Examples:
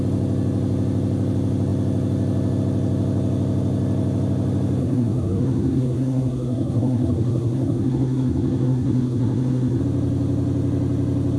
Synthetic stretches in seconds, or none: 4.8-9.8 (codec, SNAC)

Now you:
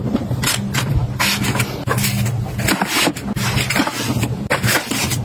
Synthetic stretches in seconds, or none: 0.0-1.0 (vocoder, BigVGAN v2); 3.8-5.2

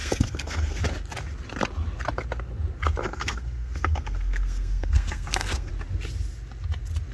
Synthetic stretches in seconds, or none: 0.0-0.8 (codec, SNAC); 3.0-5.7

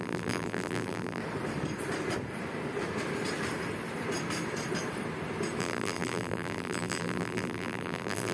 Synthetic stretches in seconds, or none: 0.0-1.2 (vocoder, BigVGAN v2); 5.6-8.3

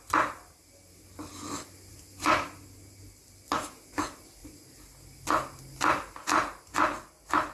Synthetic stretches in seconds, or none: none

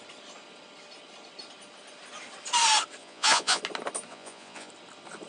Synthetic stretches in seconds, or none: 3.0-3.6 (vocoder, Vocos); 4.1-4.7

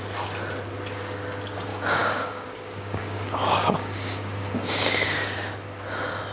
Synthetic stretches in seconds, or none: 1.7-5.5 (codec, DAC)